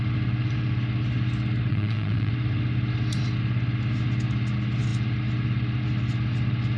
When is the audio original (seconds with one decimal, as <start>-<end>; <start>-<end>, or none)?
0.0-1.7; 2.3-6.8